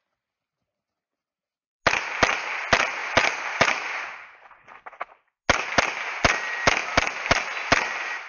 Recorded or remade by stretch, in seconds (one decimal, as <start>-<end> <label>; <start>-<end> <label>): 0.0-3.0 recorded; 3.0-3.9 remade; 3.9-6.8 recorded; 6.8-7.4 remade; 7.4-8.3 recorded